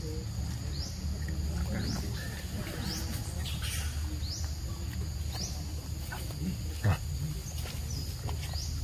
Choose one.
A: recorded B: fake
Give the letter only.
A